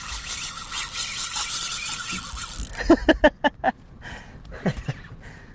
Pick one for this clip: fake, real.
real